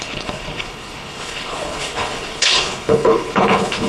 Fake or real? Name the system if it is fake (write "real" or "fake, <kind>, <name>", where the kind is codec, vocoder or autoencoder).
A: fake, codec, HILCodec